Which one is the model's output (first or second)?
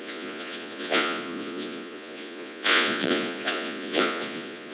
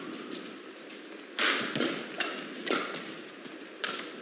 first